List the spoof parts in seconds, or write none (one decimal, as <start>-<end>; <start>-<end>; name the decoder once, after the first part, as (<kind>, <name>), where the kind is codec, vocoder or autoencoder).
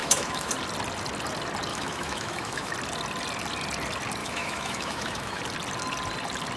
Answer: 0.0-0.5 (autoencoder, DAC-VAE); 1.7-2.7; 4.2-5.4